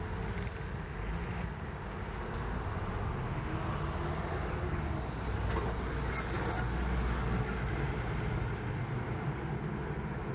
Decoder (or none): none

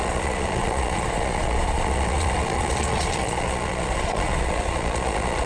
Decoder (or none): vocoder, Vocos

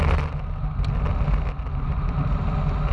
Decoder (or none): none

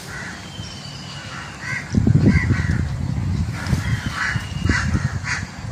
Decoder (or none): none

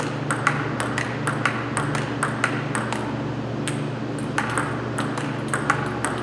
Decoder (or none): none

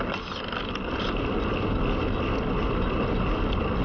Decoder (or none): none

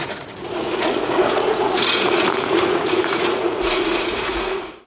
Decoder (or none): vocoder, Vocos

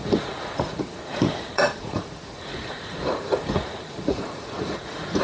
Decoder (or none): vocoder, Vocos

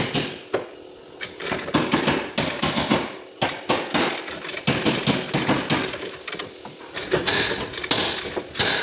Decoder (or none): none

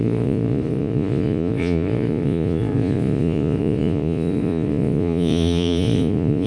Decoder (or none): vocoder, Vocos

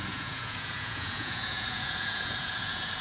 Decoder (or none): vocoder, Vocos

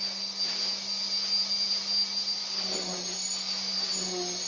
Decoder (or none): none